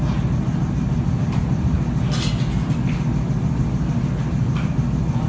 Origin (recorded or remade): recorded